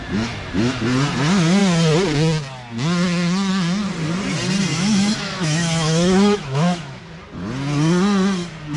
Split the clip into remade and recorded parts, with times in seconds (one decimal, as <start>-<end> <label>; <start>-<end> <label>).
0.0-4.7 recorded; 4.7-7.0 remade; 7.0-8.8 recorded